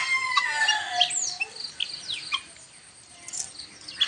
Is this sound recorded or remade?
recorded